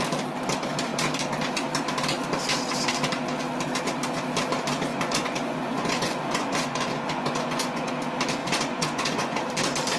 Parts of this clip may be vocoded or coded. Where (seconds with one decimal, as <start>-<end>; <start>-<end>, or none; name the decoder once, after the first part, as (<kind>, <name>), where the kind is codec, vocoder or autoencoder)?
4.9-7.9 (vocoder, Vocos); 8.4-9.4